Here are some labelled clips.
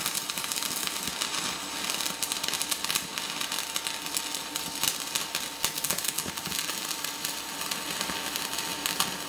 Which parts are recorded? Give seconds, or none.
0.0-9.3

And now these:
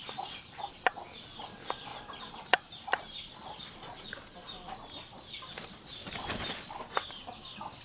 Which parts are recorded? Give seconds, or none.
0.7-1.9; 3.3-4.4; 5.2-7.8

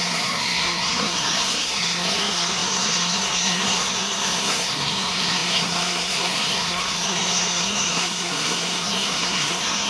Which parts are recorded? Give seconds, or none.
none

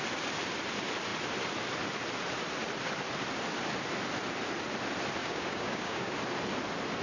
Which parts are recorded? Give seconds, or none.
0.0-5.2; 6.1-7.0